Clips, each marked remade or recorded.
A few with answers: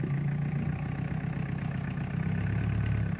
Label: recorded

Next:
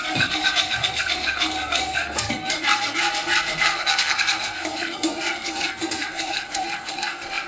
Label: remade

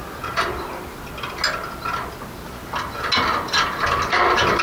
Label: recorded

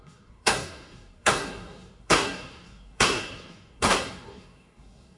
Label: remade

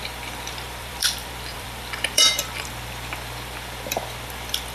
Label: remade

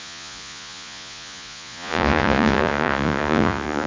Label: remade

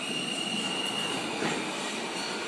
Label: recorded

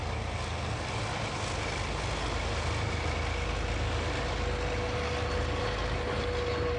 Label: recorded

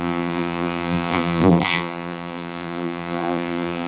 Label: remade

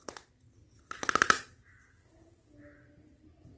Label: recorded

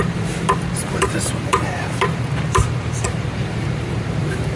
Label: remade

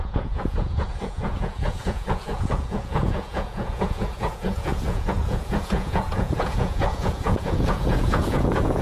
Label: remade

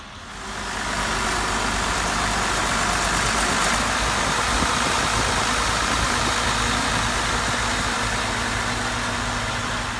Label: recorded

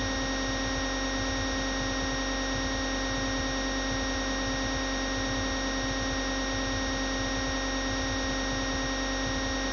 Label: recorded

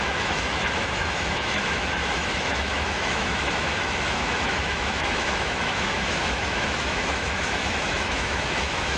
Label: remade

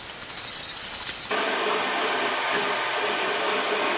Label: recorded